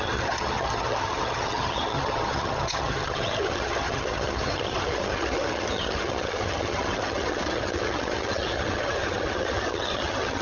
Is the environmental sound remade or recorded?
remade